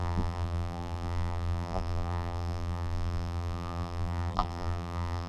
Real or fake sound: fake